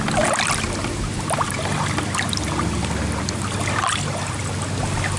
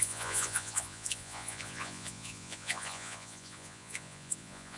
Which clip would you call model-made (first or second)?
second